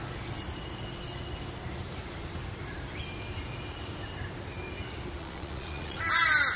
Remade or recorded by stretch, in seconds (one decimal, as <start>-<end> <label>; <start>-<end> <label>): 0.0-5.2 recorded; 5.2-6.0 remade; 6.0-6.6 recorded